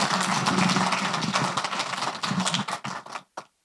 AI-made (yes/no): no